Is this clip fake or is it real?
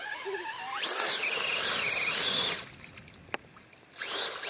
real